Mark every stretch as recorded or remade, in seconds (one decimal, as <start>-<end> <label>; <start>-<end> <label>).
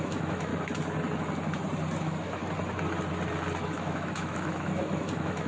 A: 0.0-0.5 remade; 0.5-2.0 recorded; 2.0-2.4 remade; 2.4-3.7 recorded; 3.7-5.5 remade